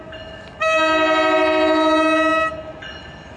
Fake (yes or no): no